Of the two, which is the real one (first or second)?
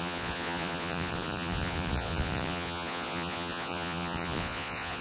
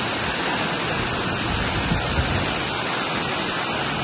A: second